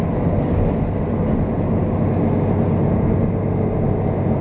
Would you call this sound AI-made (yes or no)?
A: no